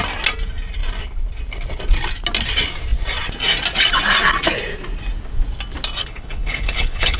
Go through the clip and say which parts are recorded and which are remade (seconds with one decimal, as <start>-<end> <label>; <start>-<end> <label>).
0.0-6.0 recorded; 6.0-7.2 remade